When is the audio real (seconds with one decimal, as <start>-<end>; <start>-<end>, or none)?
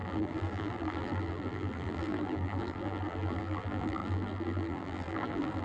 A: none